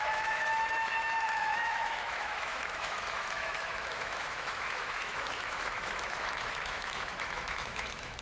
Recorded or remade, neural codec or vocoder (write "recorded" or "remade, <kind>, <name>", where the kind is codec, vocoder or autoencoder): remade, autoencoder, DAC-VAE